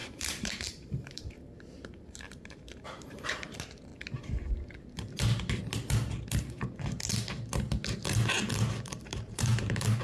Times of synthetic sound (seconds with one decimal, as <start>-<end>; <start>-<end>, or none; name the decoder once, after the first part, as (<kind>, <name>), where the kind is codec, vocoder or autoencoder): 0.0-3.9 (vocoder, BigVGAN v2); 9.0-10.0